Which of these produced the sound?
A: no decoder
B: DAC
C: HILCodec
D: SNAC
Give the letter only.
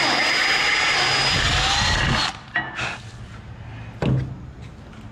A